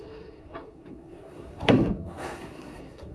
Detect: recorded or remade remade